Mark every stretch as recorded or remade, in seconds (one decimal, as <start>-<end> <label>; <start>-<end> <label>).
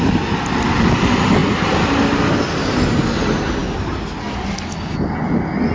0.0-5.7 recorded